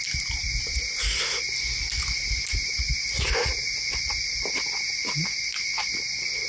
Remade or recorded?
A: recorded